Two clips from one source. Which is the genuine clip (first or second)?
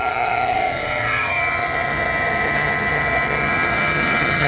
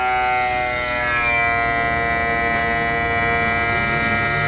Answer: second